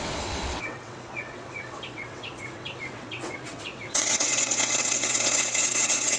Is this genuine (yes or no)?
no